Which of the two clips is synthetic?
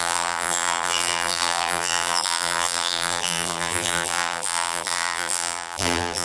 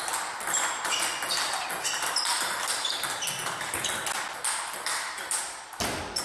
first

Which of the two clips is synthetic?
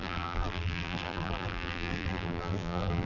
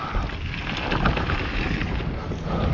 first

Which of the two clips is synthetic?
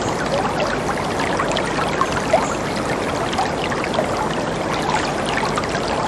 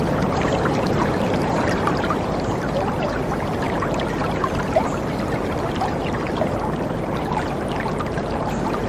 second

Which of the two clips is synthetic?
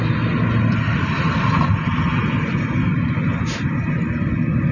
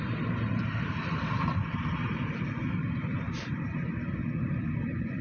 second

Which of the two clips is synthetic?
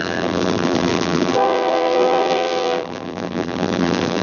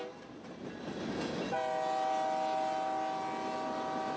first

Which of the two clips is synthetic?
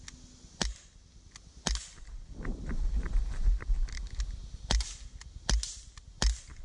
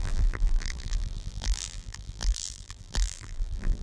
second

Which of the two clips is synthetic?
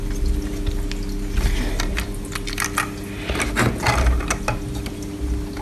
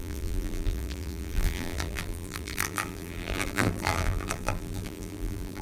second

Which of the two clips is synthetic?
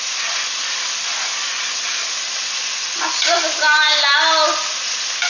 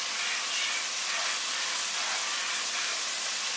second